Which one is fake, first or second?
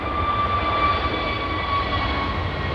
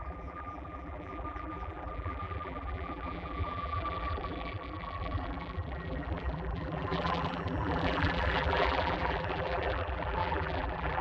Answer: second